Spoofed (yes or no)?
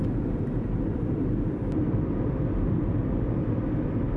yes